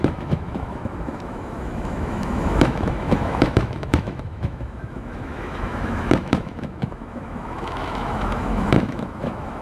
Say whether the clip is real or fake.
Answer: fake